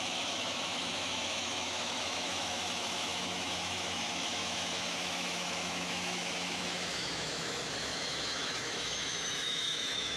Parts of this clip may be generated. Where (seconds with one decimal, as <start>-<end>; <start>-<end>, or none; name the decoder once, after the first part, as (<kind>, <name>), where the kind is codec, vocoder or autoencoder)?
0.0-10.2 (autoencoder, DAC-VAE)